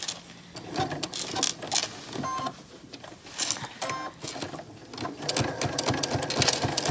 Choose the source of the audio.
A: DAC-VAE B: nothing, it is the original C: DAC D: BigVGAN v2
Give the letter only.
B